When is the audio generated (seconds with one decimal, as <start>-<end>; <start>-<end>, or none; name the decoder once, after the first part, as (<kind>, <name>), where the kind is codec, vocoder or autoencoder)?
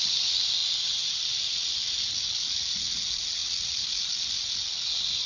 none